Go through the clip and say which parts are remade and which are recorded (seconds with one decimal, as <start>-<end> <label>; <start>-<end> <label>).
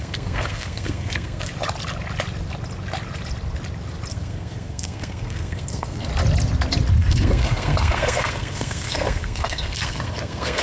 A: 0.0-1.5 remade; 1.5-4.1 recorded; 4.1-6.1 remade; 6.1-7.0 recorded; 7.0-10.6 remade